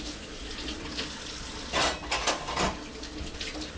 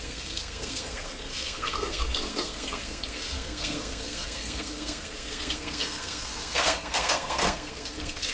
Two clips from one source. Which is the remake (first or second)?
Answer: second